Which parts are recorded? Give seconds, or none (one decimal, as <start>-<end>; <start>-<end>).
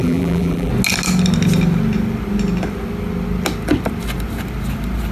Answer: 0.7-5.1